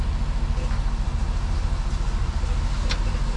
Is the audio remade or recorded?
recorded